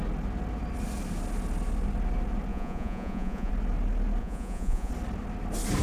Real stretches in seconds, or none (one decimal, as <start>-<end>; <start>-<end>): 0.0-2.5; 3.5-4.2; 4.9-5.8

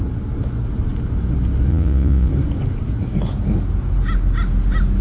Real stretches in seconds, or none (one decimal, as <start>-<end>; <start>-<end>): 0.0-1.7; 2.3-5.0

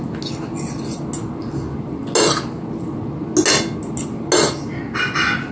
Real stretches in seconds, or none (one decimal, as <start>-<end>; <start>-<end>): 0.0-5.5

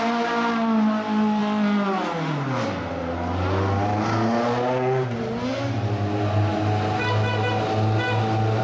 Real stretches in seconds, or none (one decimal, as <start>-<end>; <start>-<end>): 0.0-8.6